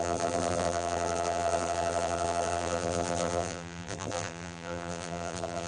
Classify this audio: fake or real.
fake